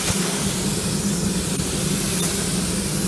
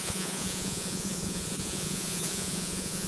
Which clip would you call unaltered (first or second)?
first